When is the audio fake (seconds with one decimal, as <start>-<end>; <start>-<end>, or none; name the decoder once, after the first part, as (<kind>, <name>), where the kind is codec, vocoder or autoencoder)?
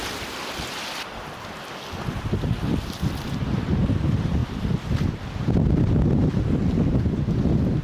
0.0-3.7 (vocoder, BigVGAN v2)